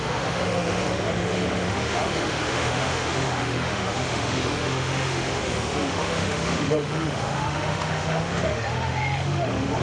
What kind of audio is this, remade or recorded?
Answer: remade